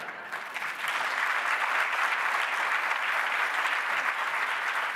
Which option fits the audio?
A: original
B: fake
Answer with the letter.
B